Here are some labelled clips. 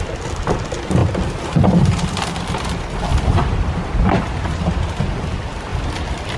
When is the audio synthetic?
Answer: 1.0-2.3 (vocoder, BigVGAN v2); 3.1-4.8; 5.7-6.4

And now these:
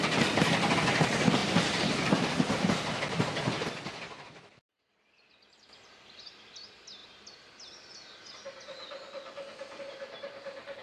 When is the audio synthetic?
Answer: none

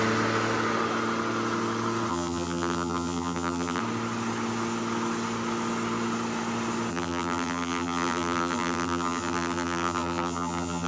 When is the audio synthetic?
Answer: 2.1-3.8 (vocoder, BigVGAN v2); 6.9-10.9